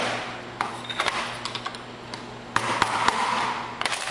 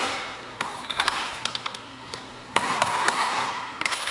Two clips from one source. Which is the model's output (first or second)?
second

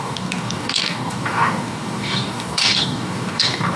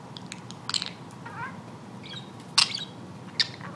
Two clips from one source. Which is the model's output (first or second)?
first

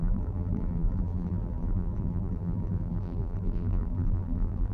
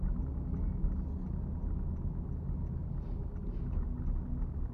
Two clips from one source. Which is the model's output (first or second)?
first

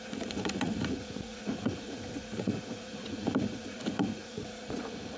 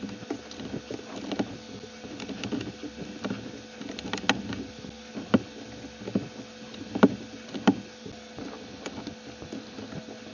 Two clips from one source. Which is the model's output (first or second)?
first